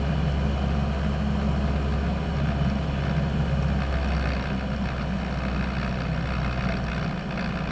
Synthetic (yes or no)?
no